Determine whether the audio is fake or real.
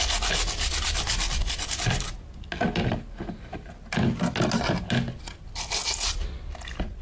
real